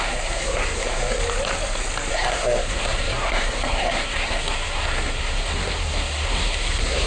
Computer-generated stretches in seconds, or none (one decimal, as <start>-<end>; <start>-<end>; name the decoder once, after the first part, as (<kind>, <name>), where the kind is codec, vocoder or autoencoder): 0.0-1.2 (codec, SNAC); 2.1-7.1